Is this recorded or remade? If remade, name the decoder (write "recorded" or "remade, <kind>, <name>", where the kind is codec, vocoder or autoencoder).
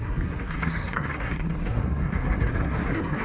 remade, codec, SNAC